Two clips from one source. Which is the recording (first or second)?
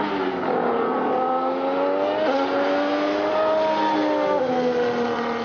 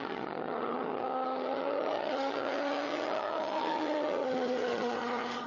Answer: first